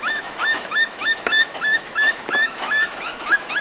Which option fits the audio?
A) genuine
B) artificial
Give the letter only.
B